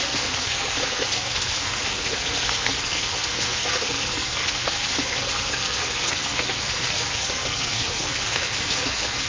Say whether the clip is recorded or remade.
remade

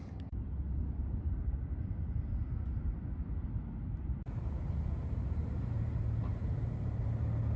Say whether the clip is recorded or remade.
recorded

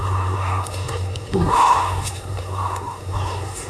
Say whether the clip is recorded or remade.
remade